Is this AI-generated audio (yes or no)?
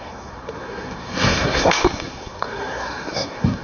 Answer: yes